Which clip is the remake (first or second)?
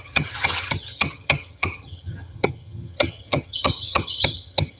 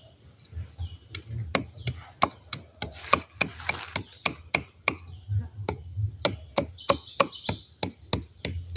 first